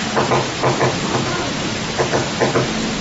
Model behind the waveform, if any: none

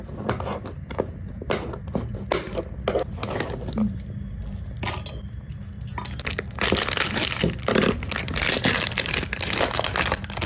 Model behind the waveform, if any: none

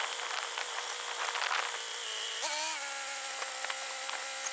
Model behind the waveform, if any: none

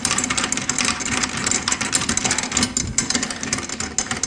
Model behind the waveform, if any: none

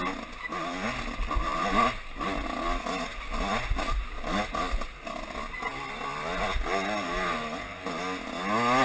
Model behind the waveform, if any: none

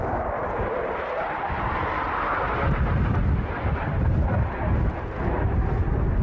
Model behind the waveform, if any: none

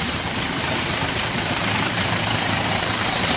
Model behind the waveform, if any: vocoder, BigVGAN v2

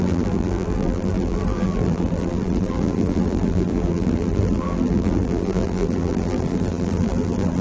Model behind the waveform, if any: vocoder, BigVGAN v2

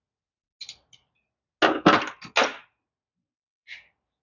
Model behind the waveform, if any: none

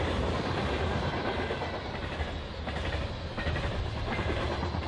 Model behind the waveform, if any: none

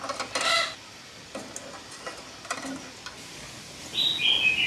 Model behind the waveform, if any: none